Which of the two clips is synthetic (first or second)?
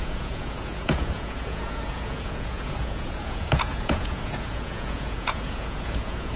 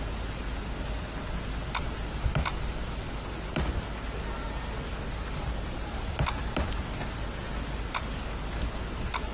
first